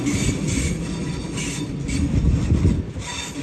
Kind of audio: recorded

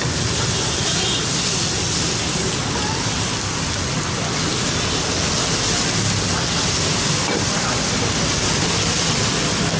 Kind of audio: recorded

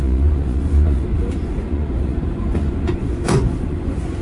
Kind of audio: remade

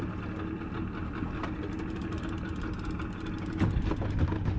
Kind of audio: recorded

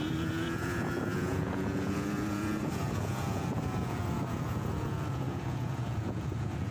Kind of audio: remade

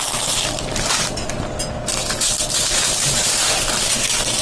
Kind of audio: recorded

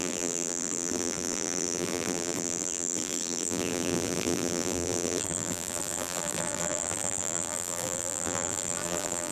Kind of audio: remade